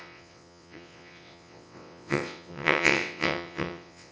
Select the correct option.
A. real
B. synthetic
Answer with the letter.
B